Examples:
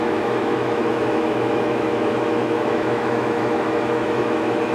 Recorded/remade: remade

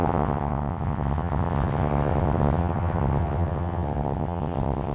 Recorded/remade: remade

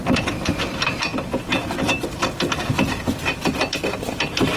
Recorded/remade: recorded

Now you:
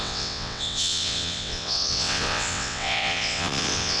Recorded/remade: remade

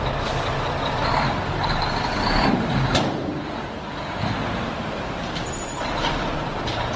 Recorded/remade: remade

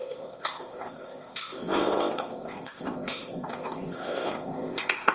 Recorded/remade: remade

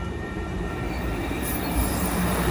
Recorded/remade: remade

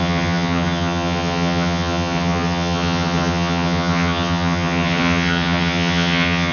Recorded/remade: remade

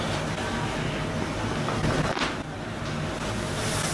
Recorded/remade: recorded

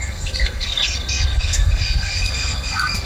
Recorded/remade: remade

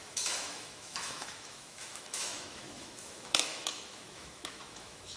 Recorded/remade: remade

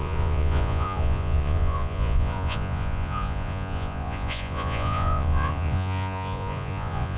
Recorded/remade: remade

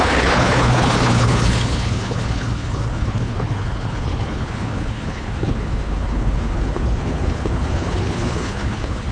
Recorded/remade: remade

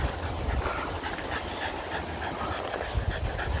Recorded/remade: recorded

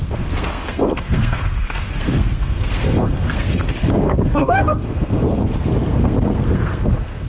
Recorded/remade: remade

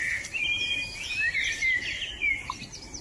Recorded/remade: recorded